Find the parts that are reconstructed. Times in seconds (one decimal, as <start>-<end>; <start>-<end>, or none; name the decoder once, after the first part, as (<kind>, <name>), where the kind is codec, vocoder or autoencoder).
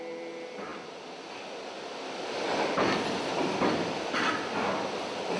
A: none